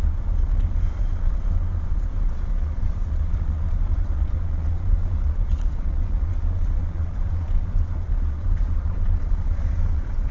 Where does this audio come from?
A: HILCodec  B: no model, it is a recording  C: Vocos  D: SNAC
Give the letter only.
C